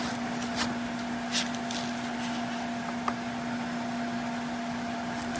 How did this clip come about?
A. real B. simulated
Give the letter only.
A